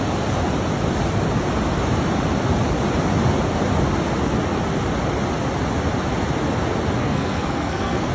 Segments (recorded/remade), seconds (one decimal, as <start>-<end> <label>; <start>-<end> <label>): 0.0-7.0 recorded; 7.0-8.1 remade